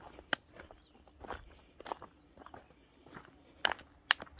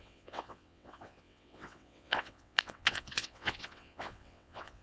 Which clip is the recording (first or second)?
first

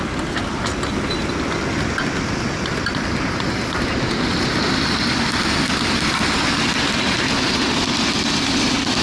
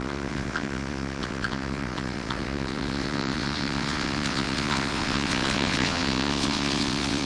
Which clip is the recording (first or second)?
first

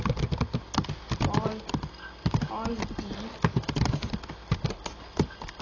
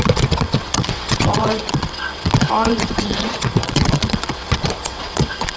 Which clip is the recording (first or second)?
first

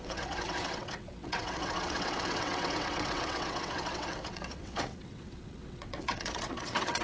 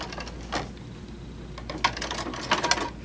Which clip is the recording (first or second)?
second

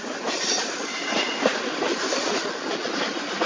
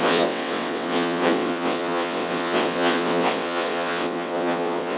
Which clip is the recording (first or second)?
first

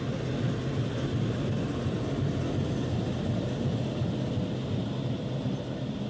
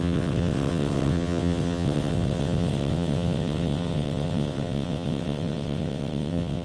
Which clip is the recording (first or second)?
first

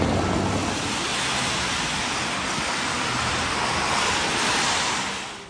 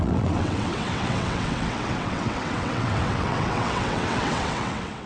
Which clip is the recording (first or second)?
first